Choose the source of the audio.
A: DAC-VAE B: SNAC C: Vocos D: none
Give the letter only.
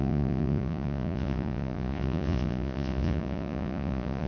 C